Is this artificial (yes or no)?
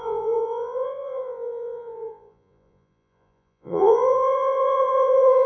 yes